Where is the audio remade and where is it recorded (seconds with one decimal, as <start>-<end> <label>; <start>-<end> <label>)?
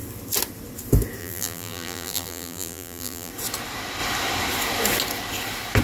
0.0-1.2 recorded; 1.2-3.3 remade; 3.3-5.8 recorded